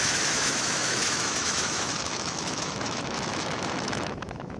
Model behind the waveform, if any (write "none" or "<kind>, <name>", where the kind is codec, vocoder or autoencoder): autoencoder, DAC-VAE